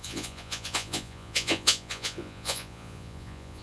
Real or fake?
fake